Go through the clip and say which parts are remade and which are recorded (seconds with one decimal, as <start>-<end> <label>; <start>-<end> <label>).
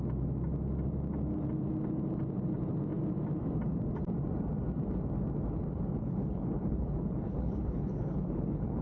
0.0-6.0 recorded; 6.0-8.8 remade